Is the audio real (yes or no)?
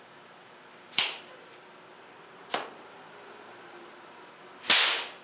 yes